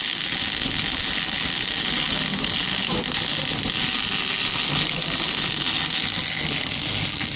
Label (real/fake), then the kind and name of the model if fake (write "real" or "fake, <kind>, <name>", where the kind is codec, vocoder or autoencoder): real